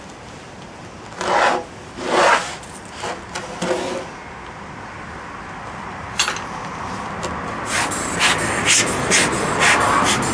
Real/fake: real